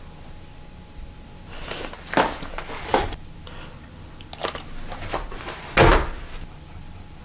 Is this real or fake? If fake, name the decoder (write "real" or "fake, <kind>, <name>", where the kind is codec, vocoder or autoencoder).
real